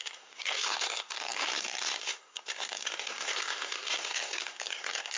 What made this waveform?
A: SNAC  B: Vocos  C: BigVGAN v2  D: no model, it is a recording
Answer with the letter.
A